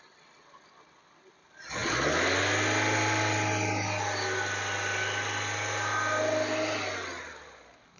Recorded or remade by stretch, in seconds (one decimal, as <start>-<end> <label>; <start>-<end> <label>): 0.0-8.0 recorded